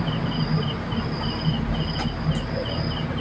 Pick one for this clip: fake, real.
real